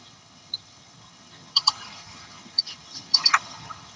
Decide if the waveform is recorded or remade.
remade